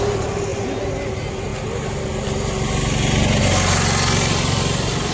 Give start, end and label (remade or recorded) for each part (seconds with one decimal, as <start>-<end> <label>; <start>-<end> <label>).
0.0-5.1 recorded